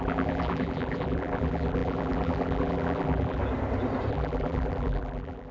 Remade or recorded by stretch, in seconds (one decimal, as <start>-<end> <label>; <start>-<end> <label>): 0.0-3.4 remade; 3.4-4.1 recorded; 4.1-5.5 remade